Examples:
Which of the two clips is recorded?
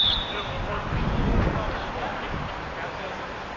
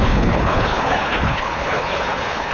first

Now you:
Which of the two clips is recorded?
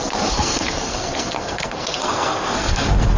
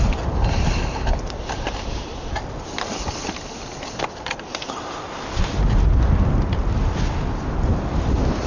second